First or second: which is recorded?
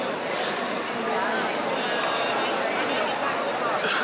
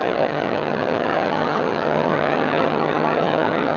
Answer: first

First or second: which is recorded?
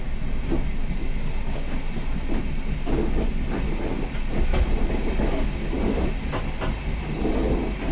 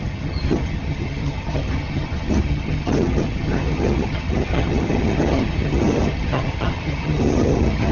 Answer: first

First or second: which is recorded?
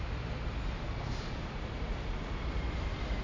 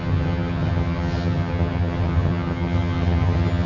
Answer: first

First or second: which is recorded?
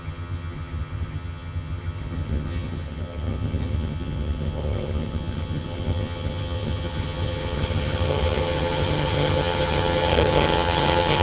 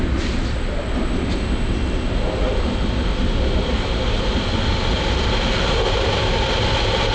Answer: second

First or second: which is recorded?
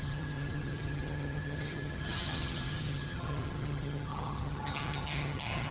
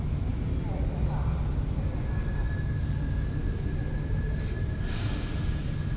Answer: second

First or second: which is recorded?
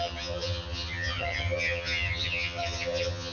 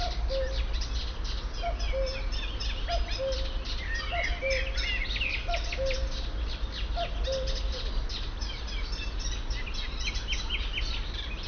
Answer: second